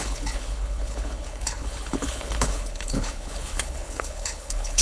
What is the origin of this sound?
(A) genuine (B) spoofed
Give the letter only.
B